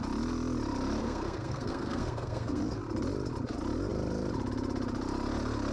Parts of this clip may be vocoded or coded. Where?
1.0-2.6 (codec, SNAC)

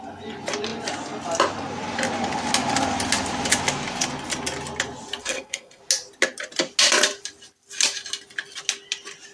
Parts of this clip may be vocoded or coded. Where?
5.2-5.8 (codec, SNAC)

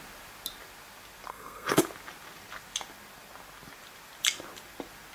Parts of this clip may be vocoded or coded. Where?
1.3-1.8 (codec, SNAC)

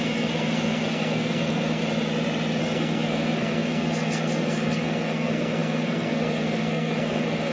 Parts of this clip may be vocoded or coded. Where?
0.0-1.8 (codec, SNAC); 2.6-7.5